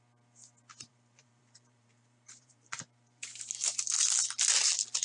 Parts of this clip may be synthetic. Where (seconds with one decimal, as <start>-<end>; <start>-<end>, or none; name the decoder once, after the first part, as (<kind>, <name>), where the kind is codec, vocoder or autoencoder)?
0.9-3.9 (vocoder, BigVGAN v2)